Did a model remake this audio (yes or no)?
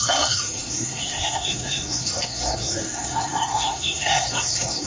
yes